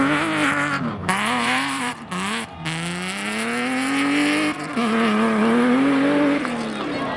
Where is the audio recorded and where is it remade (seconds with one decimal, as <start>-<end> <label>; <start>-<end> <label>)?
0.0-1.0 recorded; 1.0-1.9 remade; 1.9-7.2 recorded